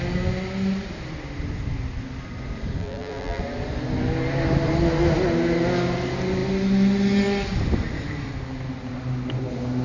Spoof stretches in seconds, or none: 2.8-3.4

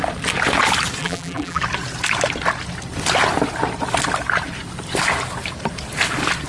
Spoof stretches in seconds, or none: 1.0-1.6

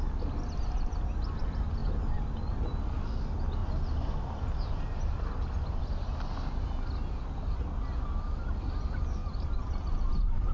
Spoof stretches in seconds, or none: 9.2-9.7

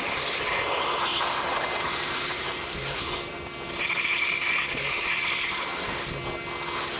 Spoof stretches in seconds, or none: 1.1-3.5